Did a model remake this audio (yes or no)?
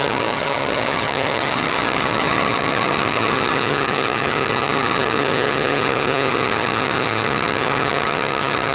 yes